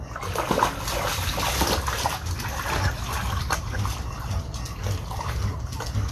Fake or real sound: real